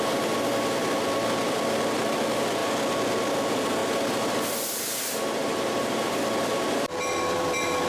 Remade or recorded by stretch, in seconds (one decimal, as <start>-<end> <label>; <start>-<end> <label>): 0.0-2.6 remade; 2.6-3.3 recorded; 3.3-3.8 remade; 3.8-4.8 recorded; 4.8-7.9 remade